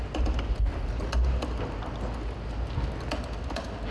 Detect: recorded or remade recorded